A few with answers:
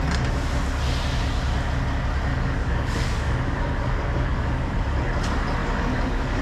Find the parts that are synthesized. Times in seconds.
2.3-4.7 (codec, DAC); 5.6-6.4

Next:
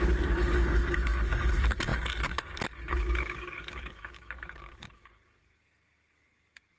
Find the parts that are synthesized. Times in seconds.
0.0-6.8 (codec, DAC)

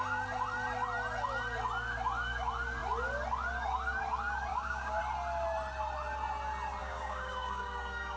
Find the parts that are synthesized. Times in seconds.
4.5-5.0 (codec, DAC); 6.8-8.2

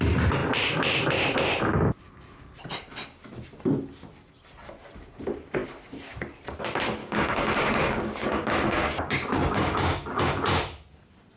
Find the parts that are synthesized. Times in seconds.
7.0-10.2 (codec, DAC)

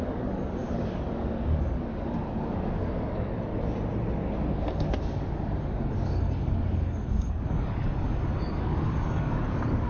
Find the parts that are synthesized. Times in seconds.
0.0-3.3 (codec, DAC); 4.6-9.9

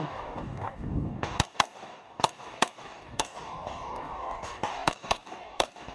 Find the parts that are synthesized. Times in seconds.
0.0-5.9 (codec, DAC)